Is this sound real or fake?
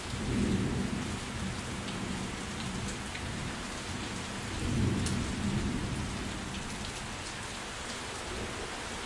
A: real